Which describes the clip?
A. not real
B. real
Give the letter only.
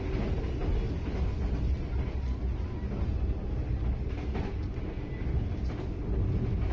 B